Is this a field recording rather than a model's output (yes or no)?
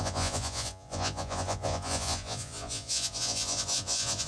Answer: no